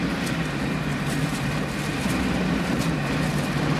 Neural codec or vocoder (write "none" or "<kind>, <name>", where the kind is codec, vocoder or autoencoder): none